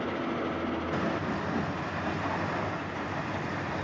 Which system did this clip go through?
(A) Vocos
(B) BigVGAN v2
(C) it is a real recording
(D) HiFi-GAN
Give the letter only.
C